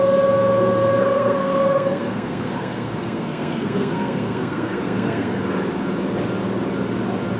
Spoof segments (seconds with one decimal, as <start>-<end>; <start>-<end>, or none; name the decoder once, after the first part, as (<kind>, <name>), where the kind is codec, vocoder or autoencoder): 1.0-5.4 (codec, SNAC)

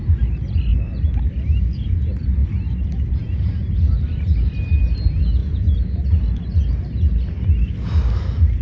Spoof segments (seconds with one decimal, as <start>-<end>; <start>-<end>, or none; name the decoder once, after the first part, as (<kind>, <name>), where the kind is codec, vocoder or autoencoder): none

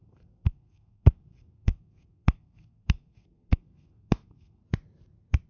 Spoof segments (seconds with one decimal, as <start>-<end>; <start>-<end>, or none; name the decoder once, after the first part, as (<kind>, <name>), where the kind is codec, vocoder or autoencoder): 0.0-4.6 (codec, SNAC)

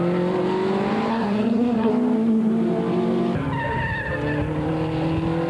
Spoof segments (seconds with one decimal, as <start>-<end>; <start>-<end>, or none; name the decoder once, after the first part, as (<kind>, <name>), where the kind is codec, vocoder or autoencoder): 1.1-1.9 (codec, SNAC)

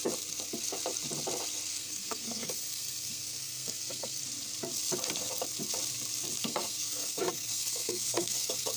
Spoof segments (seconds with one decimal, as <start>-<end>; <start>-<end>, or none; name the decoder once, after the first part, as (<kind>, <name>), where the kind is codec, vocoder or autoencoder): 1.7-4.2 (codec, SNAC); 6.4-8.8

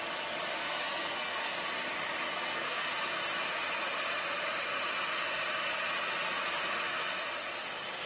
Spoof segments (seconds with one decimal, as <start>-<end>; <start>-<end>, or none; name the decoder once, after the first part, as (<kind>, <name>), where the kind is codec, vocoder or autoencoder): 0.6-1.5 (codec, SNAC); 2.3-2.9